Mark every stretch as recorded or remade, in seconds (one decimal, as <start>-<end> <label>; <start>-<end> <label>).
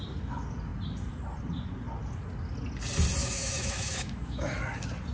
0.0-3.2 recorded; 3.2-4.6 remade; 4.6-5.1 recorded